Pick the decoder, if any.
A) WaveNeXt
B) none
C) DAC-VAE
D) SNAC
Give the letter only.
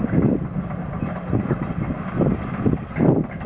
B